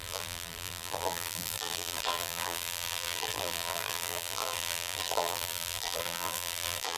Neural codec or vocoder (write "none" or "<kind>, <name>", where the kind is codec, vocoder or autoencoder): vocoder, BigVGAN v2